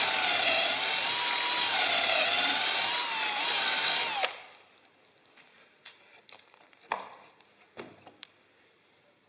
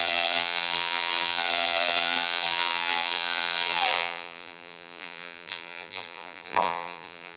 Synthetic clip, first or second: second